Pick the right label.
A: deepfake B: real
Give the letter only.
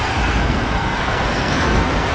A